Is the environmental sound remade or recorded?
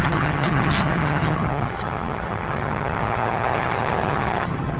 remade